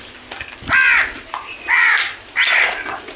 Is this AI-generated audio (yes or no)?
no